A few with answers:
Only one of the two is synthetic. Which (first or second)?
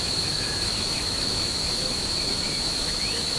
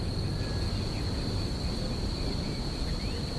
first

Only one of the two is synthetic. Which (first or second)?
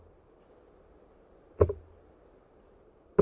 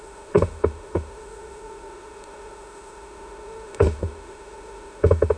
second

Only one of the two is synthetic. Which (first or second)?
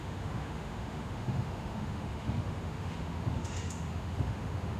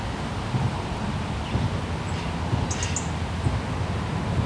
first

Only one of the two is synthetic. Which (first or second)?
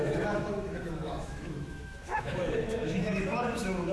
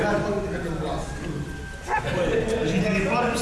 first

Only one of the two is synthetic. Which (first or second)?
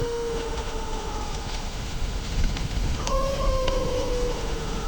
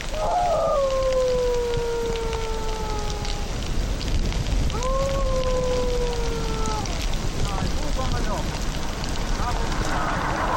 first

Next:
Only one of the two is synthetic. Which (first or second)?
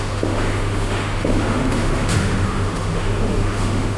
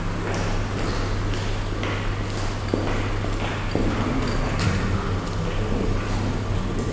first